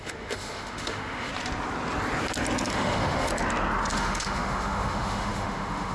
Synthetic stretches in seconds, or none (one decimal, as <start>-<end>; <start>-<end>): 0.0-1.3; 2.7-3.3; 3.9-5.9